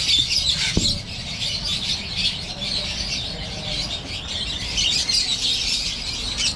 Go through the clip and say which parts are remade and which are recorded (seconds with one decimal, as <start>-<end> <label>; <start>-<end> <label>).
0.0-6.6 recorded